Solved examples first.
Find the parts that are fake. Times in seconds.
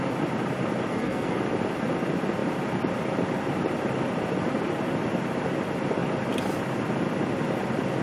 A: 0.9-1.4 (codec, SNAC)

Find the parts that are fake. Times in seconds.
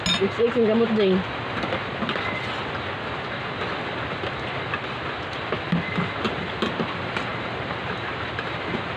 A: none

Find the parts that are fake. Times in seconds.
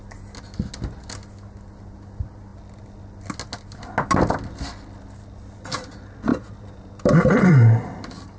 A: 6.3-7.5 (vocoder, BigVGAN v2)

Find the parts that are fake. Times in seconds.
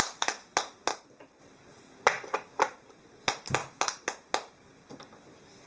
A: none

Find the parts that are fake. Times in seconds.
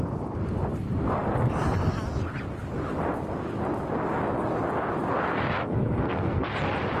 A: 5.6-6.5 (codec, SNAC)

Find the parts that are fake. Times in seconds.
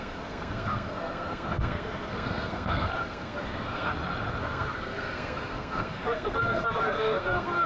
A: 0.0-3.9 (codec, SNAC); 4.4-7.7